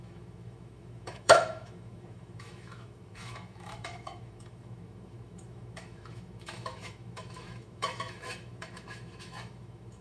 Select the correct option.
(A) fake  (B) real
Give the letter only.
A